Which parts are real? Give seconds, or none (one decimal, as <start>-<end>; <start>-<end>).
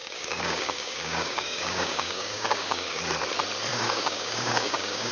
3.0-3.7